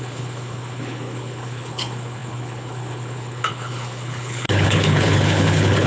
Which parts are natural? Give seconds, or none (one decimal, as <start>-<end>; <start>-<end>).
none